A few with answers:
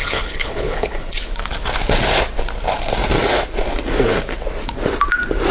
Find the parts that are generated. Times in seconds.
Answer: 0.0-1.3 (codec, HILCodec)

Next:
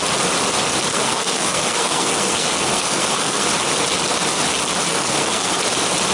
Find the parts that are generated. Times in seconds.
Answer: 0.9-3.5 (codec, SNAC); 4.9-5.6